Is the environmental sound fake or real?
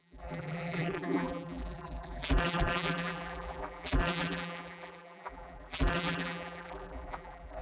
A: fake